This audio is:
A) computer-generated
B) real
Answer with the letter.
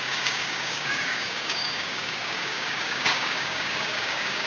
A